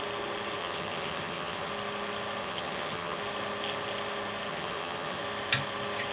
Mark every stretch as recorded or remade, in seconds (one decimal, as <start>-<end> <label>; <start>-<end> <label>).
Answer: 0.0-0.6 recorded; 0.6-1.7 remade; 1.7-2.4 recorded; 2.4-3.2 remade; 3.2-4.5 recorded; 4.5-5.2 remade; 5.2-6.1 recorded